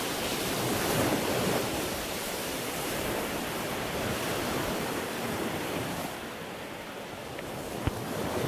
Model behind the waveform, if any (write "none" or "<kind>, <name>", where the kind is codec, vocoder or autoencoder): vocoder, BigVGAN v2